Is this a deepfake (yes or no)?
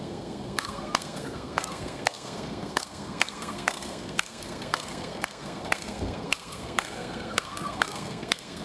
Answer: yes